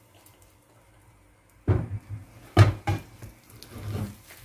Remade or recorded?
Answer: recorded